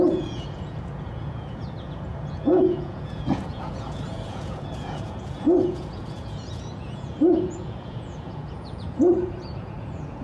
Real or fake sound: fake